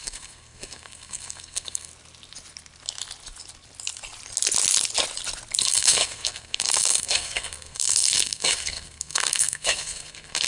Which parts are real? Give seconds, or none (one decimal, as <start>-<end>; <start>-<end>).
1.9-5.6